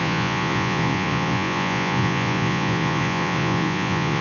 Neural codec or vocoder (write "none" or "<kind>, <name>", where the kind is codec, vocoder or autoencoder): vocoder, Vocos